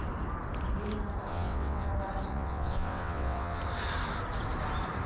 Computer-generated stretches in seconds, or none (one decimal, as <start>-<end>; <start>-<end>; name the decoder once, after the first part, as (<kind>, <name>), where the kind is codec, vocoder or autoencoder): 1.3-1.9 (vocoder, WaveNeXt); 2.3-3.6